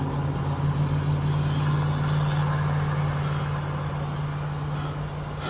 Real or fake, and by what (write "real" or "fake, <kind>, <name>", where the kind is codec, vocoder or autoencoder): real